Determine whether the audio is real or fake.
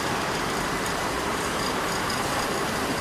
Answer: fake